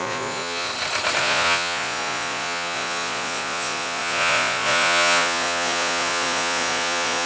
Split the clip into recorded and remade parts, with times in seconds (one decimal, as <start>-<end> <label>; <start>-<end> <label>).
0.0-0.7 remade; 0.7-1.2 recorded; 1.2-7.3 remade